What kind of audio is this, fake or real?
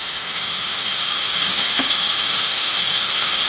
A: fake